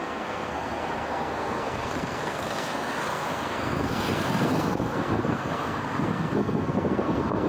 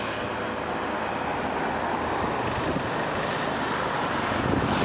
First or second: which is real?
second